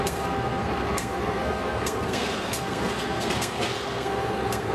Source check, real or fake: fake